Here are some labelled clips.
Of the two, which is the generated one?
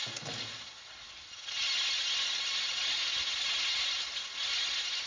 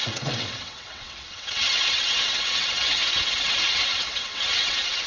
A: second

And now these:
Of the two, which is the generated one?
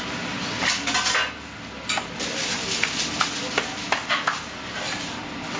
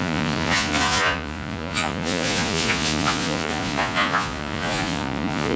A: second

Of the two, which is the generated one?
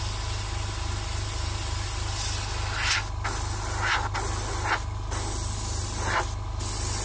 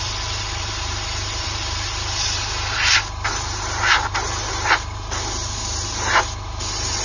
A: second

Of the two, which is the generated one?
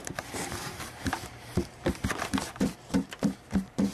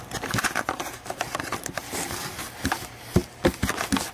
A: first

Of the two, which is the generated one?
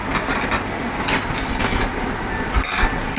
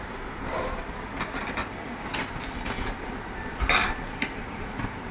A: second